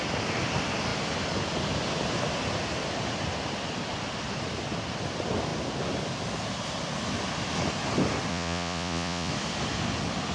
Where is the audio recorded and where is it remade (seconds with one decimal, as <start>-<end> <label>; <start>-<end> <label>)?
0.0-8.3 recorded; 8.3-9.3 remade; 9.3-10.3 recorded